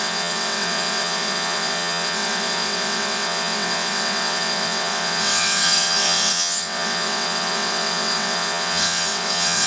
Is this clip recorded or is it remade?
remade